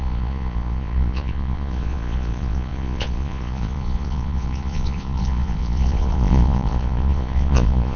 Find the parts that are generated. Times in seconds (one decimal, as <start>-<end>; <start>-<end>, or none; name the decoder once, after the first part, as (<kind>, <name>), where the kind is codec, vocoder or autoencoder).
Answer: 0.0-8.0 (vocoder, Vocos)